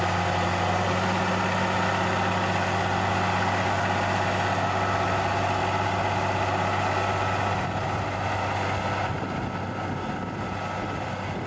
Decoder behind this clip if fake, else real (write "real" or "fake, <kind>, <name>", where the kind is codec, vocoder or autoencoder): real